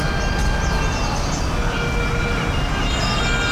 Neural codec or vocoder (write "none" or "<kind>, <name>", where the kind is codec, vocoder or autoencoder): none